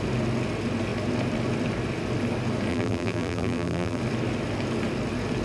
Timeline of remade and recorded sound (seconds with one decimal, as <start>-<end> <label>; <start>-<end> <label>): 0.0-2.7 recorded; 2.7-4.0 remade; 4.0-5.4 recorded